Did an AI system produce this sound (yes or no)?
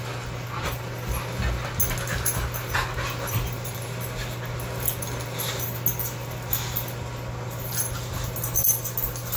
no